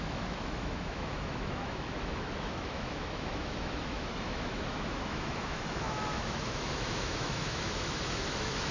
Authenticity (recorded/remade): remade